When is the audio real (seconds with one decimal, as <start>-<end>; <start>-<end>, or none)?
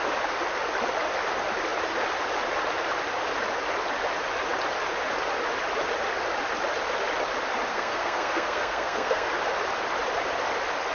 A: 0.0-7.7; 9.3-10.9